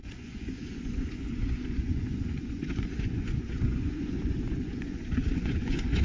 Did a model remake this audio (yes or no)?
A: yes